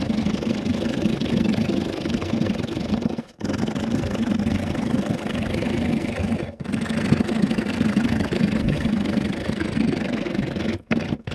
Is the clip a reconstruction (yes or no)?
yes